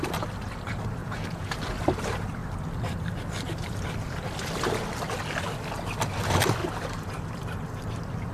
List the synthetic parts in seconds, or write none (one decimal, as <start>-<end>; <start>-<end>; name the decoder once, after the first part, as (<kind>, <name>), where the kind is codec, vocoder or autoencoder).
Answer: 1.0-1.5 (vocoder, Vocos)